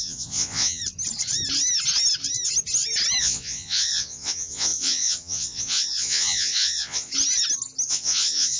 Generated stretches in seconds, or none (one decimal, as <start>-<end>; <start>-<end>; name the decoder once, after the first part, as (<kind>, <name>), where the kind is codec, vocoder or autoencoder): 0.0-0.8 (vocoder, Vocos); 3.2-7.1; 7.9-8.6